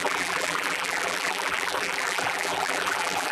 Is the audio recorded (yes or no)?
no